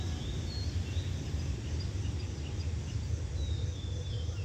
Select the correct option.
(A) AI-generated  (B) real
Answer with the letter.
B